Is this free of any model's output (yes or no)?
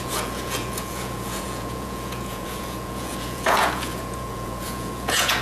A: no